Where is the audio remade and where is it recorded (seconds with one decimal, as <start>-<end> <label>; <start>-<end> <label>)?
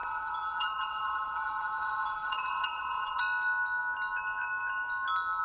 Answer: 0.0-3.2 remade; 3.2-5.4 recorded